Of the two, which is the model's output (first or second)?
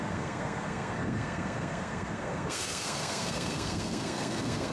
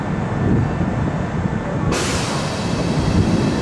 first